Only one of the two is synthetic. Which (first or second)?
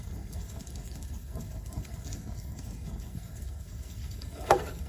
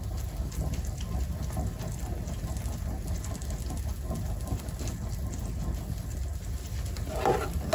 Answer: first